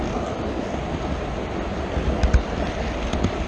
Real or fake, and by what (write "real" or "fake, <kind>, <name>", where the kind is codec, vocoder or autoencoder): real